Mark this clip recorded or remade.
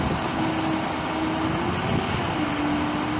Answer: recorded